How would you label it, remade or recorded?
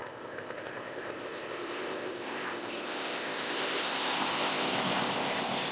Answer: remade